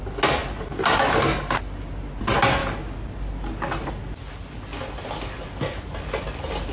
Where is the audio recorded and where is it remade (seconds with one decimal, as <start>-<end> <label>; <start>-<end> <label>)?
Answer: 0.0-6.7 recorded